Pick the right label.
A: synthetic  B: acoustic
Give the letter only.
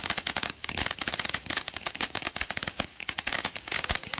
A